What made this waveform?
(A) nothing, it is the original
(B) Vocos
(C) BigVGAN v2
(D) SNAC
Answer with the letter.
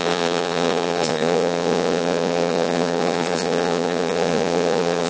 B